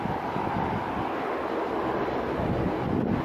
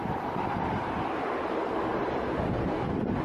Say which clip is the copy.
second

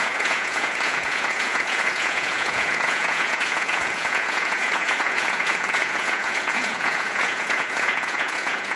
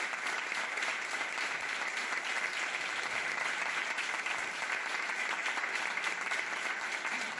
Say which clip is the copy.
first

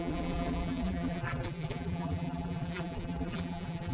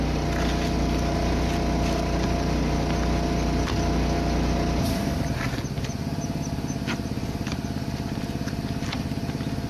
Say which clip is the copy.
first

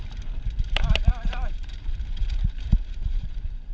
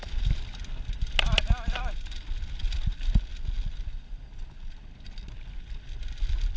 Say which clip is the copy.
first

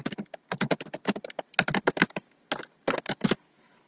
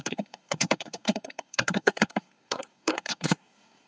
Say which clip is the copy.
second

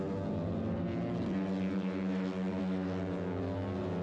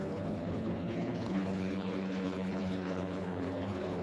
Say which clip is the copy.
second